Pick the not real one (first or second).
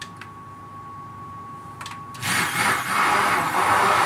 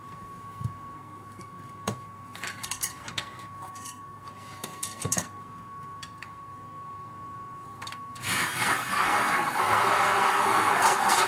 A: second